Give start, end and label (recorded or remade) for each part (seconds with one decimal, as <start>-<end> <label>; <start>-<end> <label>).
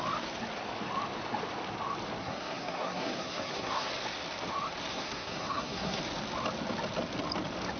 0.0-2.2 recorded; 2.2-3.9 remade; 3.9-4.9 recorded; 4.9-6.0 remade; 6.0-7.8 recorded